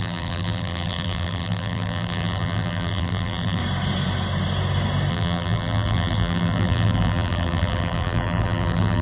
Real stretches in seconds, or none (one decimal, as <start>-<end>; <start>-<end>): 3.6-5.1